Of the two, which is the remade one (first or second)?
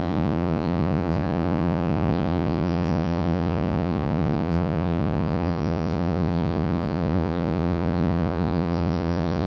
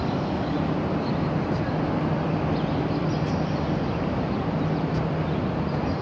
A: first